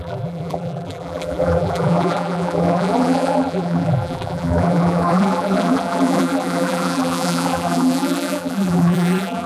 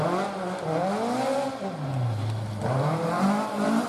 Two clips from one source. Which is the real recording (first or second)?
second